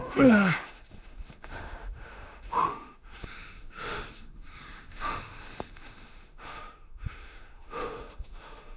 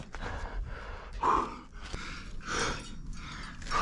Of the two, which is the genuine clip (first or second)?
second